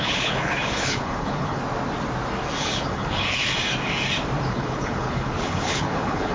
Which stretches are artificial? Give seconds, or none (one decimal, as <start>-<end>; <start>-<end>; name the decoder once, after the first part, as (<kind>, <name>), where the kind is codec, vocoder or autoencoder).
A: 0.0-1.6 (codec, HILCodec); 2.6-3.5; 4.5-6.3